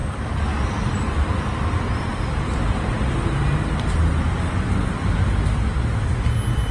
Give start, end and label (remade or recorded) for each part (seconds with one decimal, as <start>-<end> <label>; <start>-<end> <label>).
0.0-6.7 recorded